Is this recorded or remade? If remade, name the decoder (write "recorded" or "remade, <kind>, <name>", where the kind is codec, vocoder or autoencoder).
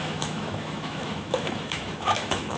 remade, autoencoder, DAC-VAE